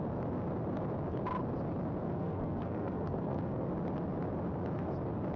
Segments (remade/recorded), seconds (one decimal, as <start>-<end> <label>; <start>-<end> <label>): 0.0-2.0 recorded; 2.0-3.7 remade; 3.7-5.4 recorded